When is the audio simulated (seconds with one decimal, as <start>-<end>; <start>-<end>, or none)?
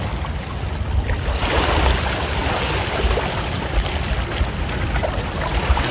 none